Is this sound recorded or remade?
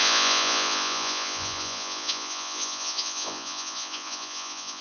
remade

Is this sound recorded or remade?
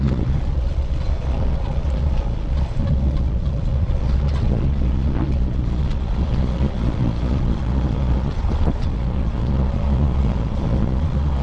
remade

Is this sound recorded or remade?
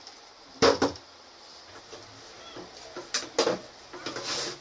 recorded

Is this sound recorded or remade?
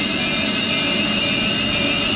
recorded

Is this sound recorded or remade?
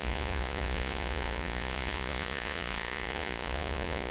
remade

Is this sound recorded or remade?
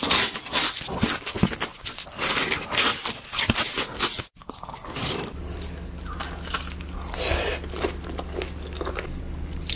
recorded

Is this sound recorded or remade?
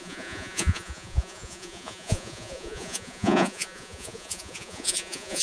remade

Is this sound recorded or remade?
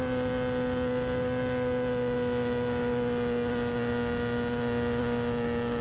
recorded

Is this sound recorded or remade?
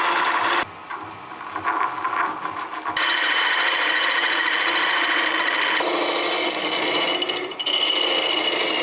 recorded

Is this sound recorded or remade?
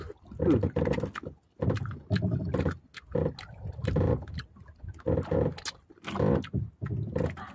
recorded